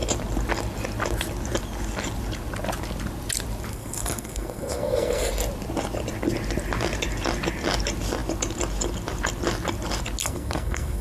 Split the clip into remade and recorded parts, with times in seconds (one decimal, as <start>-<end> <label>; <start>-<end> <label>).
0.0-3.7 recorded; 3.7-5.3 remade; 5.3-10.2 recorded; 10.2-11.0 remade